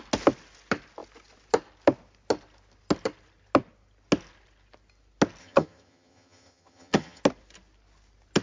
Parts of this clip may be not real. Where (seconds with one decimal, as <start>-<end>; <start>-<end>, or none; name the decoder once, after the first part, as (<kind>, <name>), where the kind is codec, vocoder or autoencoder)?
5.4-7.2 (vocoder, HiFi-GAN)